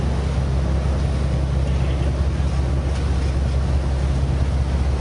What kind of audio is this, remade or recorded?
recorded